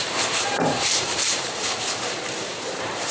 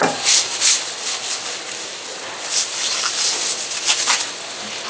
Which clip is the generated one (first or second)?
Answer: first